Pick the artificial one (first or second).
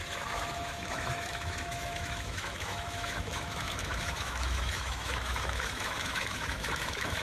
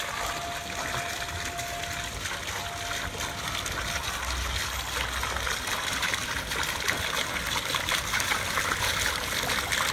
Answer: first